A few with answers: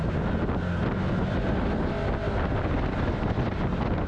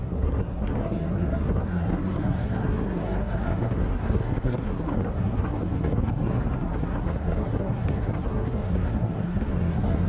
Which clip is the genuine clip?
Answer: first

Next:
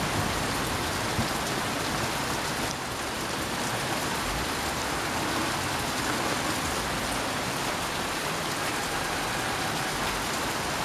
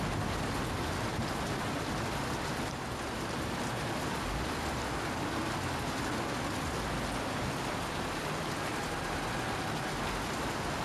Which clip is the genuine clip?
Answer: second